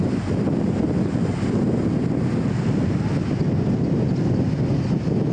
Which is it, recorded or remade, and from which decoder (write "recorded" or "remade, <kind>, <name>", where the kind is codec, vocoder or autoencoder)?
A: recorded